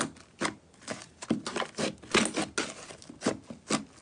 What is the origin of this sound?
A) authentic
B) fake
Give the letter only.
A